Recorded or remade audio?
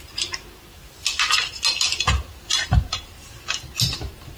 recorded